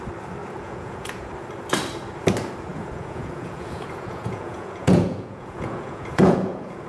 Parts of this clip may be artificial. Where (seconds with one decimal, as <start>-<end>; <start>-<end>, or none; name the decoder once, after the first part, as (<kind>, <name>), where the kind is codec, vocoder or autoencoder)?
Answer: 0.4-1.3 (vocoder, Vocos); 2.7-6.9